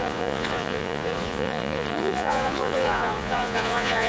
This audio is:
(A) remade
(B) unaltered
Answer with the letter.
A